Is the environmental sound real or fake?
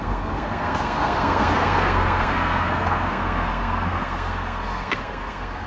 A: fake